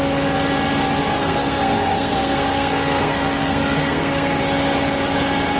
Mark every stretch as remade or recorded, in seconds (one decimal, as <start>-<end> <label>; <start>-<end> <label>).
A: 0.0-1.0 recorded; 1.0-4.4 remade; 4.4-5.6 recorded